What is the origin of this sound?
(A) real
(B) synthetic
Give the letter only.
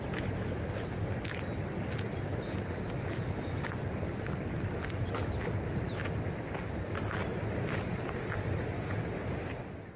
A